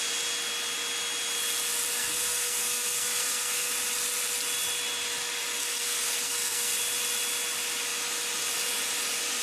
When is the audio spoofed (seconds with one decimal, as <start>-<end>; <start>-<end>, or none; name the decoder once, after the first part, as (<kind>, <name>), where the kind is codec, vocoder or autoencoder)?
1.9-3.7 (codec, SNAC); 5.6-6.7